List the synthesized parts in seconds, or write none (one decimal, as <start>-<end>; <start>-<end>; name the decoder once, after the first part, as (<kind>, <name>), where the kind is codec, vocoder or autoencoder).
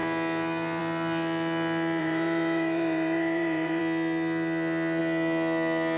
2.0-3.8 (vocoder, Vocos)